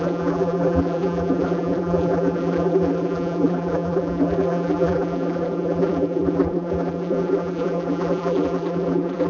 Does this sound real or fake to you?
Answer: fake